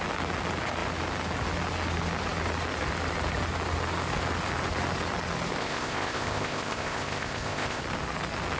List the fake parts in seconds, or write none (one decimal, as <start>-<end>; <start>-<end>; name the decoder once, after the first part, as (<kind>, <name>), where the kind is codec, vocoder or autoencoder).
5.6-7.8 (codec, ZipCodec)